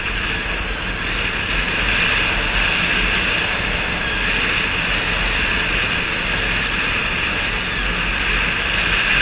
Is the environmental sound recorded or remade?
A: recorded